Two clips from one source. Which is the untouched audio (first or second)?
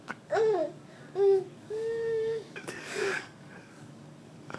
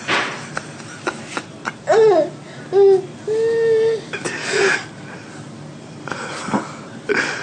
second